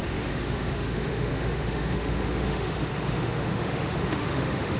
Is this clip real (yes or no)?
no